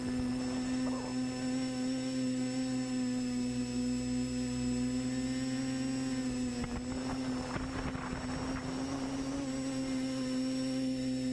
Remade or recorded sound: recorded